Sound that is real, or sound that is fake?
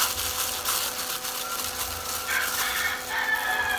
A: real